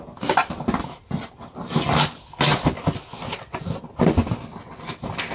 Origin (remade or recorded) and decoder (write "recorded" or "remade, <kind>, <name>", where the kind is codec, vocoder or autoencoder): recorded